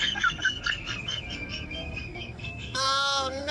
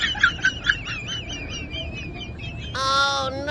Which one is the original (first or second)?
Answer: second